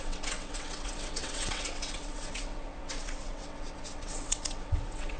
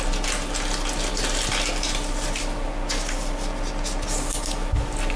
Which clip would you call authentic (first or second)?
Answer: second